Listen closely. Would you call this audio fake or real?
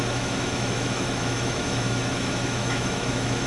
fake